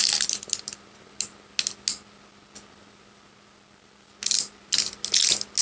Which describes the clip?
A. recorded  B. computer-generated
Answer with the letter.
A